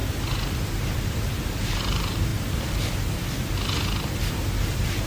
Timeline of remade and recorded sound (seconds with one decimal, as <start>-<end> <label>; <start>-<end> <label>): 0.0-0.6 recorded; 0.6-2.3 remade; 2.3-4.3 recorded; 4.3-5.1 remade